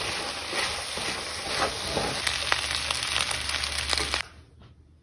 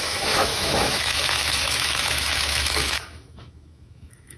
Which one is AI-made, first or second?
second